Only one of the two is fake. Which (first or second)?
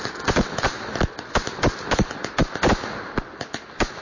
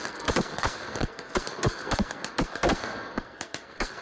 second